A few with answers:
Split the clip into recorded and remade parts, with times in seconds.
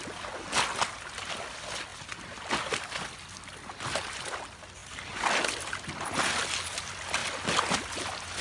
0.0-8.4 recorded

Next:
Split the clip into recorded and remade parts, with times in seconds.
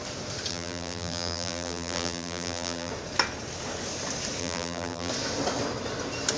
0.0-0.5 recorded; 0.5-2.9 remade; 2.9-4.4 recorded; 4.4-5.1 remade; 5.1-6.4 recorded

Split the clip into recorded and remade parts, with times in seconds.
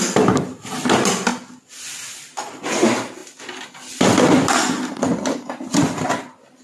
0.0-6.6 recorded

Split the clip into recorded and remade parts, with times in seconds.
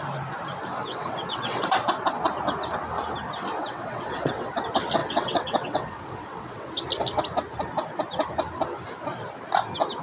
0.0-0.7 recorded; 0.7-1.7 remade; 1.7-3.6 recorded; 3.6-4.5 remade; 4.5-5.0 recorded; 5.0-6.7 remade; 6.7-10.0 recorded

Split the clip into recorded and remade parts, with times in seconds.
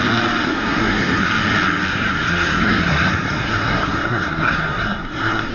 0.0-0.4 recorded; 0.4-1.3 remade; 1.3-1.9 recorded; 1.9-5.5 remade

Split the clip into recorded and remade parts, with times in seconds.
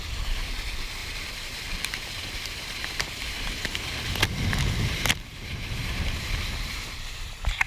0.0-1.0 recorded; 1.0-2.1 remade; 2.1-5.3 recorded; 5.3-6.4 remade; 6.4-7.7 recorded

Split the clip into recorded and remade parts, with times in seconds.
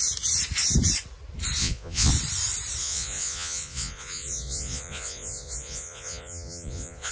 0.0-1.6 recorded; 1.6-2.1 remade; 2.1-2.8 recorded; 2.8-7.1 remade